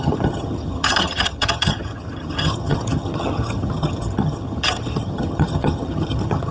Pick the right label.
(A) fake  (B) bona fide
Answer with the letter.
A